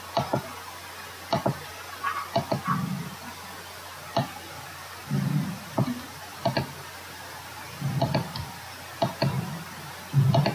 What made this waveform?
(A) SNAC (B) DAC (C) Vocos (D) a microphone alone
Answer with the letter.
D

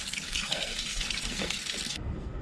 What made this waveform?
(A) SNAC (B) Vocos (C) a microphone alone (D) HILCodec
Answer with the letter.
A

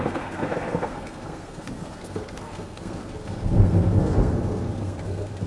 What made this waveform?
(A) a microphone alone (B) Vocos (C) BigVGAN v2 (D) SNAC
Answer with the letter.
D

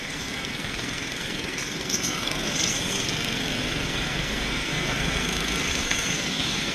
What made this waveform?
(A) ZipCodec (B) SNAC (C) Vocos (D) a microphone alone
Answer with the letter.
B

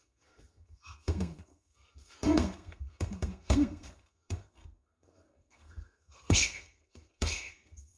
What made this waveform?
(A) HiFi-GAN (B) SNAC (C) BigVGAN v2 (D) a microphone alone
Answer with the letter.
B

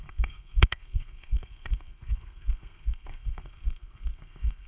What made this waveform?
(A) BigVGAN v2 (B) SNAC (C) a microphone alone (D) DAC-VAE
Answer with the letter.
B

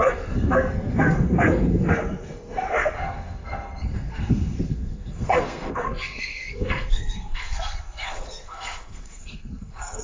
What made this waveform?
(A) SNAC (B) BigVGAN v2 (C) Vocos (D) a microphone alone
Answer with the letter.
A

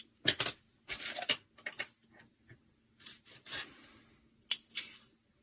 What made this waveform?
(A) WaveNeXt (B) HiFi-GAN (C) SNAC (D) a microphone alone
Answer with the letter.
D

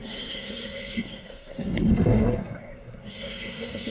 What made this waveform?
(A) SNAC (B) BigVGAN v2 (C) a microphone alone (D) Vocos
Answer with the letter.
A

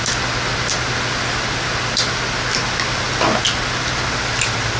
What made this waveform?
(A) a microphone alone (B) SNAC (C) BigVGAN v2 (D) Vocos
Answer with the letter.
A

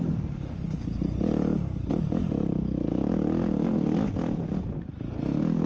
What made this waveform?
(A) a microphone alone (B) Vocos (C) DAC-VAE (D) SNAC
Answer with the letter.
A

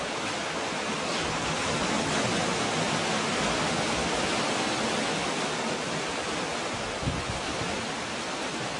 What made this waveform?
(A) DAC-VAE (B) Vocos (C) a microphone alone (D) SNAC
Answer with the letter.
C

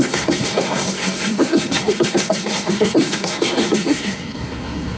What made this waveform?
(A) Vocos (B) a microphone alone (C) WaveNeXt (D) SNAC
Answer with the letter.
D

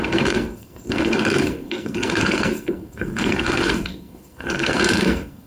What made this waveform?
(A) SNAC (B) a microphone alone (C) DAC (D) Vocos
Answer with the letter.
A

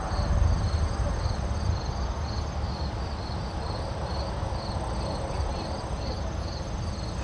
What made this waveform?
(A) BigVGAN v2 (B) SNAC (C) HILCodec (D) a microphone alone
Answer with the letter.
D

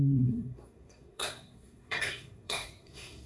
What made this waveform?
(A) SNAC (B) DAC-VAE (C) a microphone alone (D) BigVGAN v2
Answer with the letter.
A